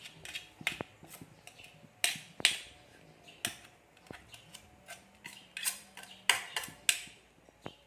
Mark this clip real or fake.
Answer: real